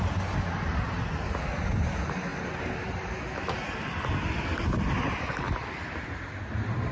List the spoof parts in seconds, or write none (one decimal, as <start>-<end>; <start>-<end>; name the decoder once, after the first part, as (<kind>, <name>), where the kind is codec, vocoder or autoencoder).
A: none